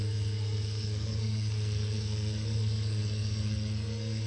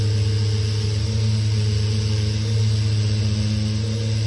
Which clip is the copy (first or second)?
first